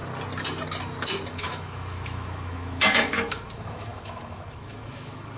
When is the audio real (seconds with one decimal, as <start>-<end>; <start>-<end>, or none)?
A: 0.0-1.3